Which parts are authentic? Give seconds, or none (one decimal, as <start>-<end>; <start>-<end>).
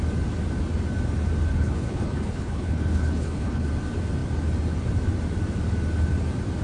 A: 0.0-1.5; 3.7-6.6